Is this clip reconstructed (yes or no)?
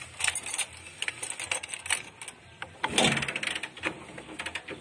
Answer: no